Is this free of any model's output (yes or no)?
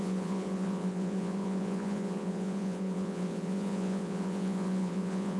no